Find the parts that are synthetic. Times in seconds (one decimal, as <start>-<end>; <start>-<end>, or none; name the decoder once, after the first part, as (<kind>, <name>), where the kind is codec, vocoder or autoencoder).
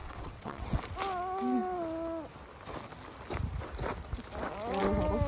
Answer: 0.0-0.8 (vocoder, WaveNeXt)